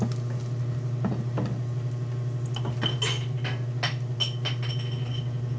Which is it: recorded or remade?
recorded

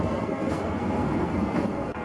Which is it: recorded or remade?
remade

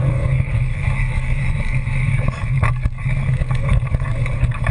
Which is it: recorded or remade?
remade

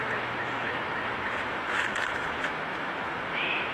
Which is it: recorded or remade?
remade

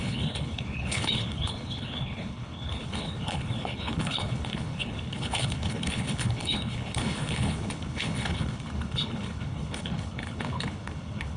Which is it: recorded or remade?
remade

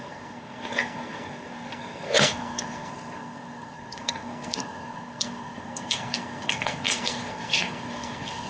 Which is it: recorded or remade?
remade